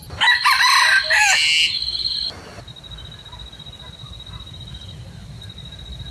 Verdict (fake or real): real